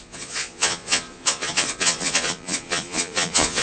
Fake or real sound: fake